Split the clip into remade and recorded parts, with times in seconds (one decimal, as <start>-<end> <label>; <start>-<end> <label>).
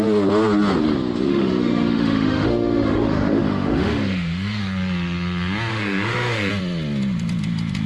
0.0-1.3 recorded; 1.3-4.6 remade; 4.6-5.7 recorded; 5.7-6.5 remade; 6.5-7.9 recorded